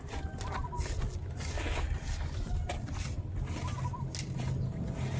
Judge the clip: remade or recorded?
recorded